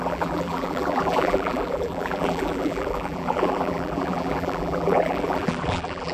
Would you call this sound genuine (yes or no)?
no